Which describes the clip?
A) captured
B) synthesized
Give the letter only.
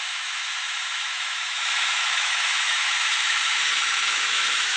B